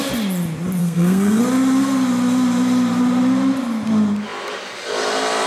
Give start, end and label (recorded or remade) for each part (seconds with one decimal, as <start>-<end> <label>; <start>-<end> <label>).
0.0-0.8 recorded; 0.8-1.4 remade; 1.4-5.5 recorded